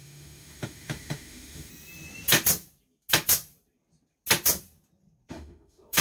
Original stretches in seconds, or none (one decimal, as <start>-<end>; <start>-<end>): 1.7-5.3